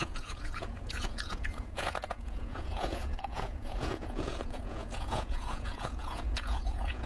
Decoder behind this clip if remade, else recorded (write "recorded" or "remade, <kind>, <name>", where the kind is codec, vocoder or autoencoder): remade, vocoder, Vocos